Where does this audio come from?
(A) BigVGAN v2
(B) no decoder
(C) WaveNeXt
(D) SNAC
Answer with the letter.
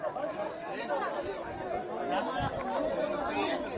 B